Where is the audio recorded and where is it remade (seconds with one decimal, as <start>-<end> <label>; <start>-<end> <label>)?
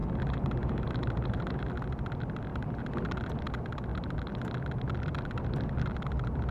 0.0-1.7 remade; 1.7-2.5 recorded; 2.5-3.2 remade; 3.2-6.5 recorded